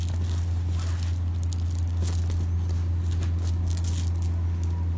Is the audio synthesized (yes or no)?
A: no